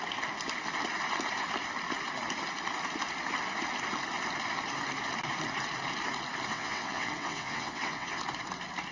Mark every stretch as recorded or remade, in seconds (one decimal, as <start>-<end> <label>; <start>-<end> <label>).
0.0-6.5 recorded; 6.5-8.2 remade; 8.2-8.9 recorded